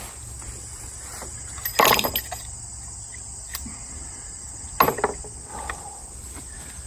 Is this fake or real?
real